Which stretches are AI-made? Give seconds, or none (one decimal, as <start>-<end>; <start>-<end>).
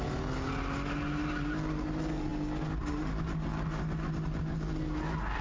none